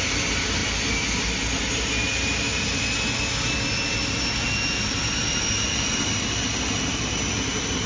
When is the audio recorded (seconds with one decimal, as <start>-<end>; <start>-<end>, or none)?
0.0-7.9